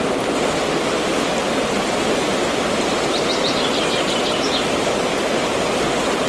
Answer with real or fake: real